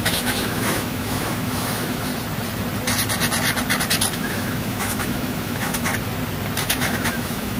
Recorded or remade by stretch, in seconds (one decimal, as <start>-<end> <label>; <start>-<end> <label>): 0.0-2.1 remade; 2.1-4.1 recorded; 4.1-5.9 remade; 5.9-6.6 recorded; 6.6-7.6 remade